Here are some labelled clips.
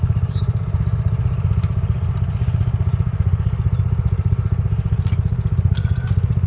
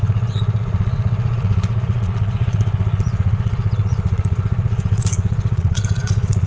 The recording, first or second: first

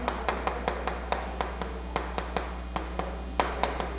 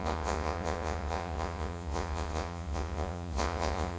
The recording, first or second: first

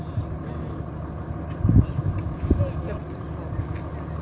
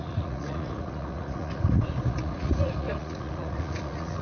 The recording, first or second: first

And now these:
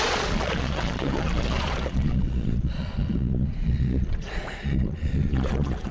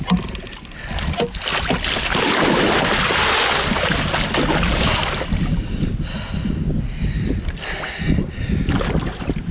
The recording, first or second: second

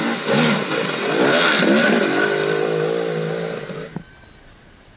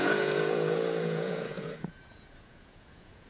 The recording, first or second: first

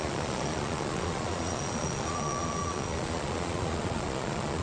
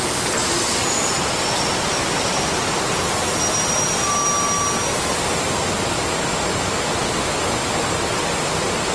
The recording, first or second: second